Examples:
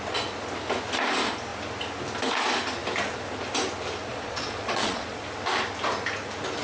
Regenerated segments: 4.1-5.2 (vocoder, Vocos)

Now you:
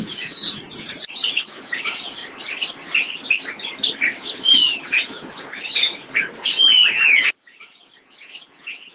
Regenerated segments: 0.0-2.2 (vocoder, Vocos); 4.2-8.9

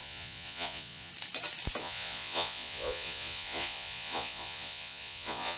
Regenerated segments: 0.0-1.1 (vocoder, Vocos); 1.8-5.6

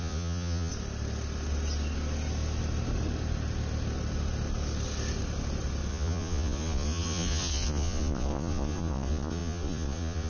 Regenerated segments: 0.0-0.7 (vocoder, Vocos); 5.9-10.3

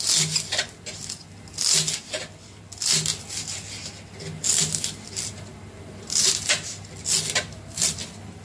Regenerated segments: none

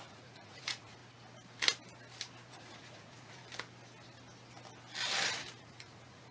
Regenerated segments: 0.0-1.0 (vocoder, Vocos); 2.5-3.4; 5.6-6.3